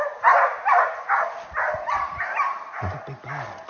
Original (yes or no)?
yes